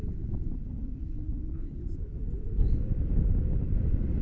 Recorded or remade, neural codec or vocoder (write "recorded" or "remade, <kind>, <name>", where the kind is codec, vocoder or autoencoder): recorded